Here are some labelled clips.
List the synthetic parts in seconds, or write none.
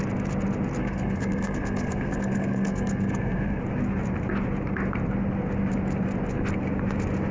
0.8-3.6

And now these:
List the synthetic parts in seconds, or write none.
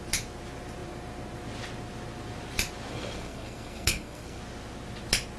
2.9-4.4